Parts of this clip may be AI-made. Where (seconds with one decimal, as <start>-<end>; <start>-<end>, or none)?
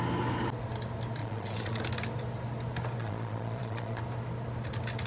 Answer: 1.2-1.8; 3.0-4.0